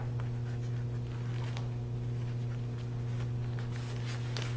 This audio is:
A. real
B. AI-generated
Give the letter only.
A